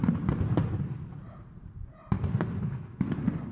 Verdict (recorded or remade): recorded